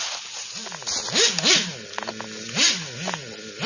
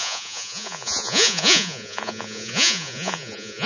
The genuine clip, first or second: first